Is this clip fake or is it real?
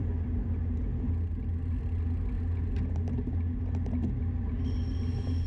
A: real